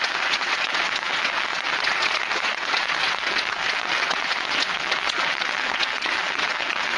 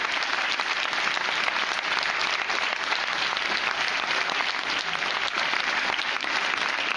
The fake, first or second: first